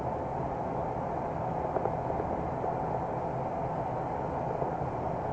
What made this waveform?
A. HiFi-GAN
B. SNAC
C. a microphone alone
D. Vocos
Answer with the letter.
C